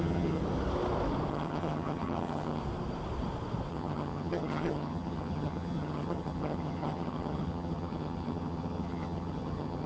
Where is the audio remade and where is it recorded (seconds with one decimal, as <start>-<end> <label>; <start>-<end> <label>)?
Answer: 0.0-0.4 remade; 0.4-1.3 recorded; 1.3-2.6 remade; 2.6-3.7 recorded; 3.7-9.9 remade